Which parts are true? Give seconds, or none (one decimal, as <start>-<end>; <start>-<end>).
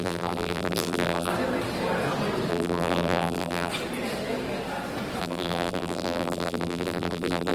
1.3-2.5; 3.7-5.2